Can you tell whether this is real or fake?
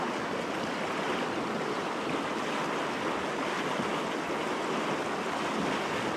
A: real